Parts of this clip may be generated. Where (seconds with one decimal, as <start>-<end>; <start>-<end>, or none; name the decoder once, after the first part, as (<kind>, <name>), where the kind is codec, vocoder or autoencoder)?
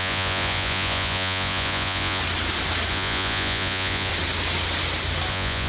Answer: 0.0-2.2 (vocoder, Vocos); 2.9-4.1; 5.3-5.7